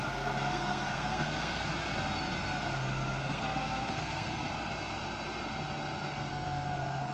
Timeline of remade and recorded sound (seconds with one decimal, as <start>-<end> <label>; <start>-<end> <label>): 0.0-1.7 remade; 1.7-2.6 recorded; 2.6-4.5 remade; 4.5-6.3 recorded; 6.3-7.1 remade